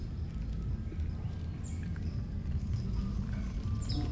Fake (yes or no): no